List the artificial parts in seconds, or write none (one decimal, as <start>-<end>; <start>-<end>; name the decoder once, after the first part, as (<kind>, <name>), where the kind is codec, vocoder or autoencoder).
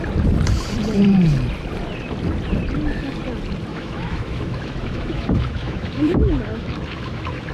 3.7-7.5 (autoencoder, DAC-VAE)